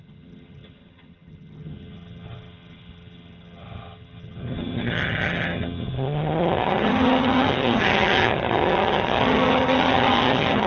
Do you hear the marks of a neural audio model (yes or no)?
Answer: yes